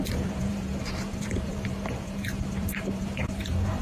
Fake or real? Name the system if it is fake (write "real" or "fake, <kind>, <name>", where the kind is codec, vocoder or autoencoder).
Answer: fake, vocoder, BigVGAN v2